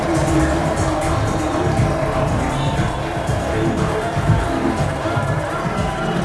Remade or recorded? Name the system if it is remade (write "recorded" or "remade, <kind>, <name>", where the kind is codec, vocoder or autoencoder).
recorded